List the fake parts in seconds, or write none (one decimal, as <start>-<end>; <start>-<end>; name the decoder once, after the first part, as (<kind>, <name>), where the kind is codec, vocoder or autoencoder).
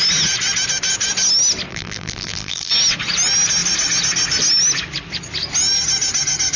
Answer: 1.7-2.7 (vocoder, BigVGAN v2)